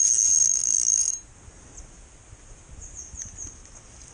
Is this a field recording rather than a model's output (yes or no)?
yes